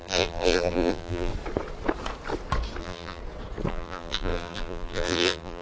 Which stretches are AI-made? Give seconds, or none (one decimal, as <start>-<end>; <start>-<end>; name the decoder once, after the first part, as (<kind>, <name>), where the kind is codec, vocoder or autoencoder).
0.0-1.3 (vocoder, BigVGAN v2); 2.8-3.2; 3.7-5.6